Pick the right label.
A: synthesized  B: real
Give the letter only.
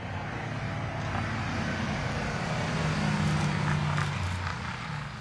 B